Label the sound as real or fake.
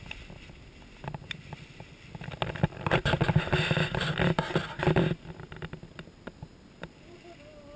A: real